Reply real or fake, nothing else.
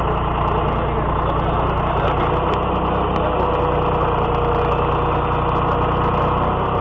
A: real